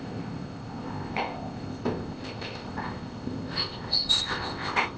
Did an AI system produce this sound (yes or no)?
yes